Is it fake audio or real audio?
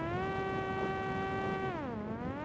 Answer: real